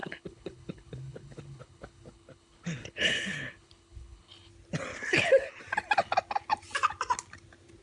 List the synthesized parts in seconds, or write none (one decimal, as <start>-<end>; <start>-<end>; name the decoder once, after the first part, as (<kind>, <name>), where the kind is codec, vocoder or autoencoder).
0.0-4.5 (codec, HILCodec); 4.9-5.6